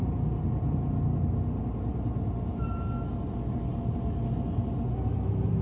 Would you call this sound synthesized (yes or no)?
no